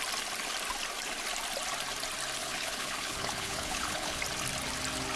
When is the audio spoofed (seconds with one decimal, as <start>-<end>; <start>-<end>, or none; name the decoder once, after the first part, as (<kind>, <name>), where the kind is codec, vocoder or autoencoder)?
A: 2.4-4.2 (codec, HILCodec)